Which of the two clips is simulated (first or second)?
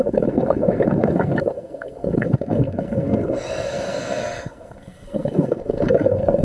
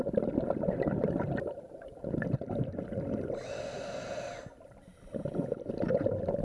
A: first